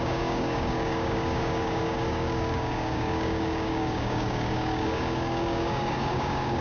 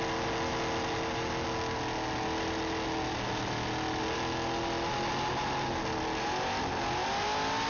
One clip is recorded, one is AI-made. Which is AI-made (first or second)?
first